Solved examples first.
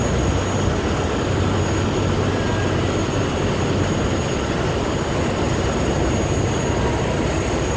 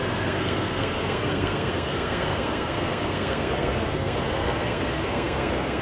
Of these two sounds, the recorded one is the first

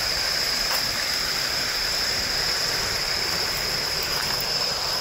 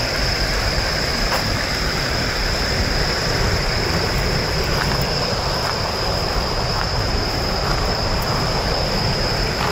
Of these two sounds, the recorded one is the first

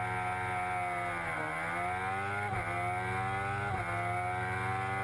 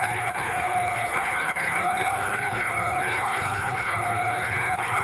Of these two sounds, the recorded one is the first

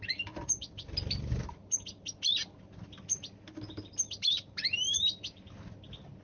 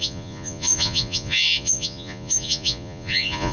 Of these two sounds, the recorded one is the first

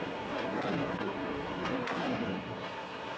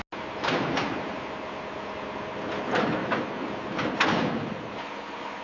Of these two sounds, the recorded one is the second